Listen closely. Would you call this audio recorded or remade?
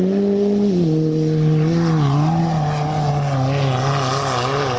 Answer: recorded